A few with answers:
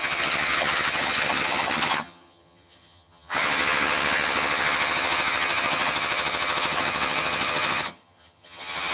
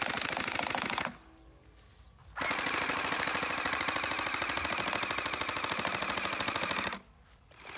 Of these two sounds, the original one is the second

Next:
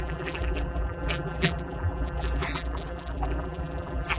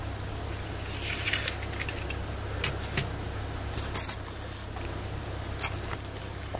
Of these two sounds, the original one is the second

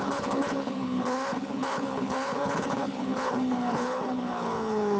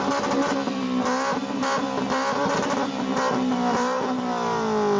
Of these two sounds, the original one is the second